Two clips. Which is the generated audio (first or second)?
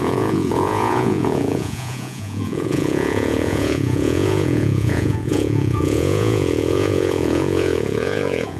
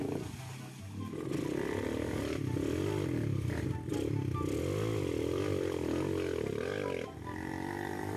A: first